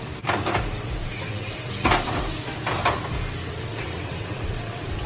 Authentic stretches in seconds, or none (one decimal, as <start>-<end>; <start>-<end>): 0.0-1.0; 1.7-3.7